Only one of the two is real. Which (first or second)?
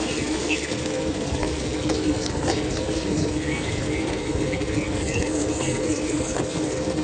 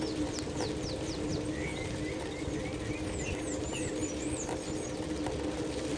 second